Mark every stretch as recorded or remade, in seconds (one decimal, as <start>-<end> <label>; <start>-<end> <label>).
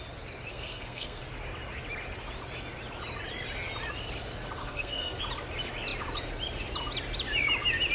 0.0-0.5 recorded; 0.5-1.2 remade; 1.2-4.6 recorded; 4.6-5.2 remade; 5.2-7.9 recorded